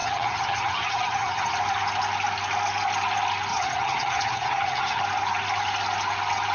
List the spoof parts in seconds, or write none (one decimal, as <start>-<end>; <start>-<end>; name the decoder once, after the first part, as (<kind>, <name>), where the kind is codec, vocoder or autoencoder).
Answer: 0.0-1.5 (vocoder, HiFi-GAN); 3.5-5.0